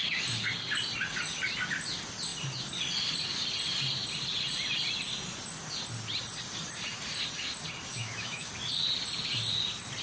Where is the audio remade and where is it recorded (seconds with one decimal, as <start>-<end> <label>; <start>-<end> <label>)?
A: 0.0-7.9 recorded; 7.9-8.5 remade; 8.5-10.0 recorded